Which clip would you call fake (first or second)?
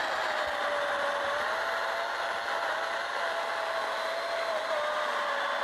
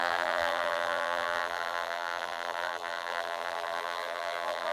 second